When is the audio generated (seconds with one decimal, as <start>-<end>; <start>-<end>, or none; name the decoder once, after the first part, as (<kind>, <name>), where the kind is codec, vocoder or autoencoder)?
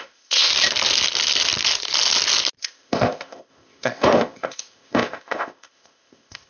0.0-0.5 (codec, ZipCodec); 2.6-6.5